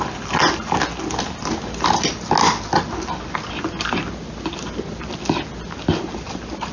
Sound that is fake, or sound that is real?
real